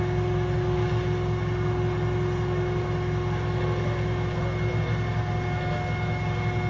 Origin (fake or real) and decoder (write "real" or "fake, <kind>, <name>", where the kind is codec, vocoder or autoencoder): real